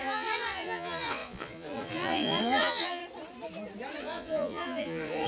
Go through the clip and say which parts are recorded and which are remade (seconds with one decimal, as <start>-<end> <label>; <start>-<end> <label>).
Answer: 0.0-3.0 remade; 3.0-4.0 recorded; 4.0-5.3 remade